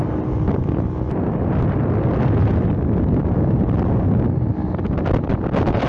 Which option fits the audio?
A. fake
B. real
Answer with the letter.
B